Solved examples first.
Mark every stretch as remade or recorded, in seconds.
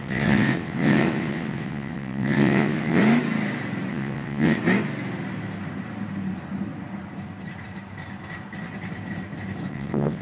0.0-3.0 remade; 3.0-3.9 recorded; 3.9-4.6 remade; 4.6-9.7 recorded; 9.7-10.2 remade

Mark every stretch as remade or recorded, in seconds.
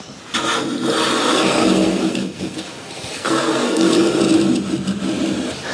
0.0-1.3 recorded; 1.3-4.2 remade; 4.2-5.7 recorded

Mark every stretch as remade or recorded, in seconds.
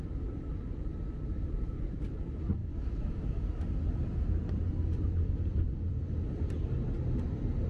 0.0-2.6 recorded; 2.6-3.7 remade; 3.7-7.7 recorded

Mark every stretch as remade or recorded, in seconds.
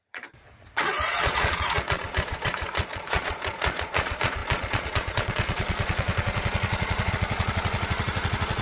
0.0-8.6 remade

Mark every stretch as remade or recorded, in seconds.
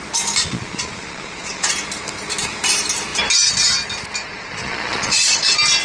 0.0-0.4 recorded; 0.4-1.7 remade; 1.7-4.3 recorded; 4.3-5.3 remade; 5.3-5.8 recorded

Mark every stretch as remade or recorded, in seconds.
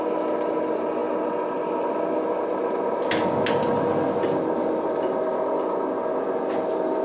0.0-7.0 recorded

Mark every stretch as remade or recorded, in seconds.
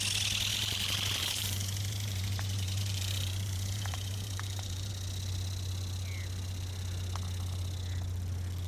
0.0-0.5 recorded; 0.5-4.9 remade; 4.9-8.7 recorded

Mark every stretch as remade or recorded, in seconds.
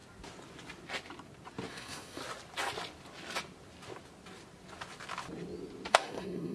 0.0-1.7 recorded; 1.7-2.2 remade; 2.2-5.9 recorded; 5.9-6.5 remade